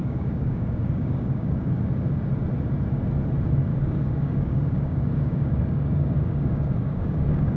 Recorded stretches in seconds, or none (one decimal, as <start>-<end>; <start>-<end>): 1.7-3.7